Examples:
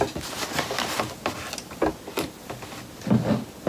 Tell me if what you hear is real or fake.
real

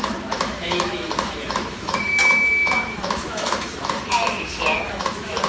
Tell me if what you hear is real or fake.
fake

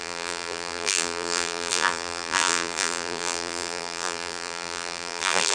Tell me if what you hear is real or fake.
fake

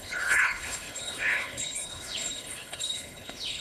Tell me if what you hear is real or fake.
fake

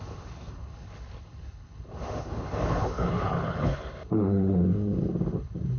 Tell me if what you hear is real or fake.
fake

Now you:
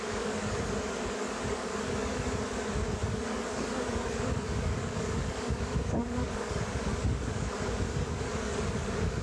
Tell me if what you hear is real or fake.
fake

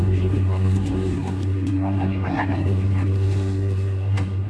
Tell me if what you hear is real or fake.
fake